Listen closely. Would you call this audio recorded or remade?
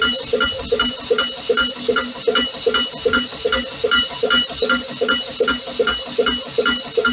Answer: recorded